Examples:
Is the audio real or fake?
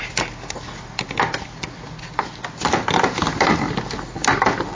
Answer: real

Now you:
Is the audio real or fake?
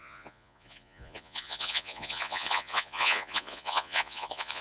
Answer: fake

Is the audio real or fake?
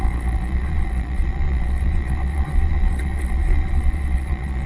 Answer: fake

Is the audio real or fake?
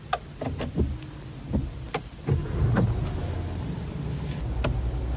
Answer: real